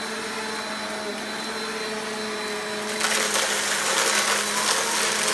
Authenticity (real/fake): real